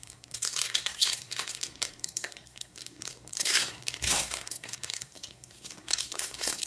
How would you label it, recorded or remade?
remade